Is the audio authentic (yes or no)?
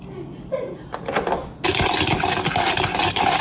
yes